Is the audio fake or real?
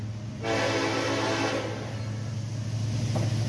real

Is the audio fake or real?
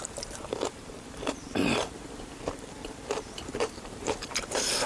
fake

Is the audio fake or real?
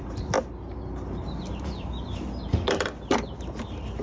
real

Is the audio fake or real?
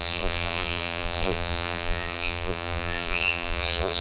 fake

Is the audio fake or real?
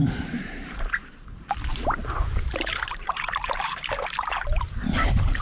fake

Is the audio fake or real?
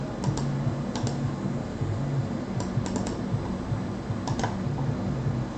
real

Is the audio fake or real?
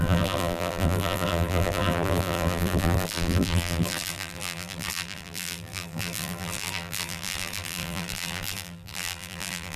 fake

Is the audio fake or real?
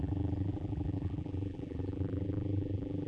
fake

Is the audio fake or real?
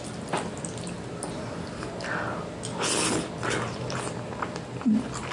real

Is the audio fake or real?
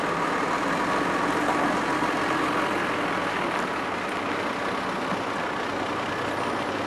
real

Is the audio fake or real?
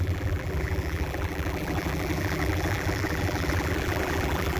fake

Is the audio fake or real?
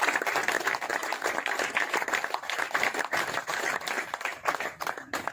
fake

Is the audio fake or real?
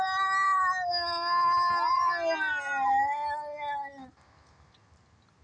real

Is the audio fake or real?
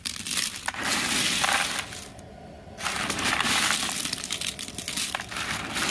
real